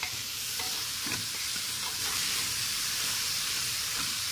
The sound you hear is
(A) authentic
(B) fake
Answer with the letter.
B